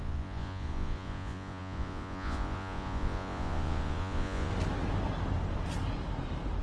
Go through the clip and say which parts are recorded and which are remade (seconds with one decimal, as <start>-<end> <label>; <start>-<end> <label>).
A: 0.0-4.5 remade; 4.5-6.6 recorded